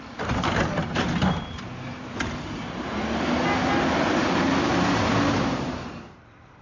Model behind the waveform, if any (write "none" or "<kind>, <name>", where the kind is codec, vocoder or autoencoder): none